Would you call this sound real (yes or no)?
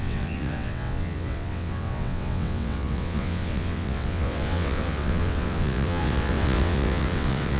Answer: no